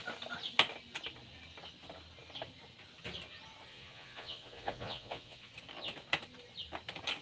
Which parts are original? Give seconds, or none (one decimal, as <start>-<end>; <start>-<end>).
0.0-3.7; 5.5-7.2